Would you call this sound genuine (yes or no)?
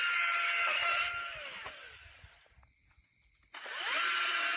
yes